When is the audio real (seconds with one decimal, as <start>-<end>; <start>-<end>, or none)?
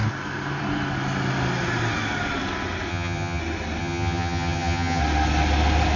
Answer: 0.0-2.9; 3.4-3.8; 5.0-6.0